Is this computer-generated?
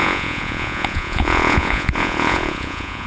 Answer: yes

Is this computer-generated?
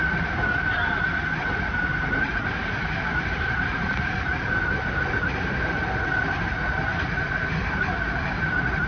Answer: no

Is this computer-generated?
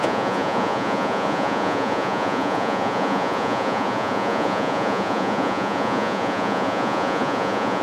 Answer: yes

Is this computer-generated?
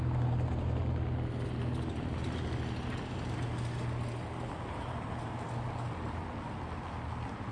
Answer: no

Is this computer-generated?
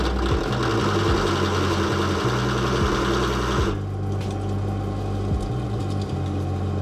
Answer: no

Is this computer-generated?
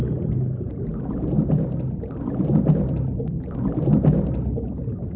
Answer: no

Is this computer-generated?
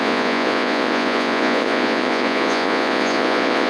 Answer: yes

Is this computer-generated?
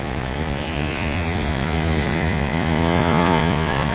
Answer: yes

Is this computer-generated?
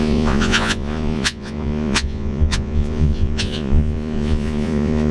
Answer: yes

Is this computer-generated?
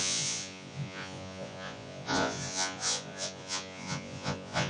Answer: yes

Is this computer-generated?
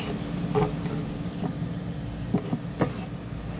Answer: no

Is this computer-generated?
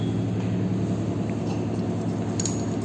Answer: no